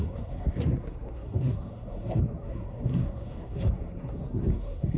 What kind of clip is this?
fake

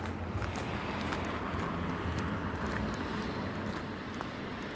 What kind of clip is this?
real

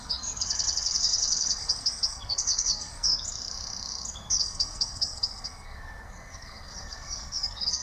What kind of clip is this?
fake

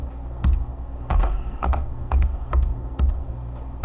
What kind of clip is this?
fake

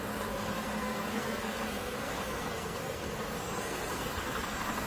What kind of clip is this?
fake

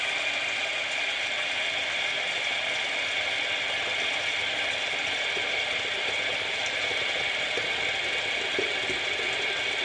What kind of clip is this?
real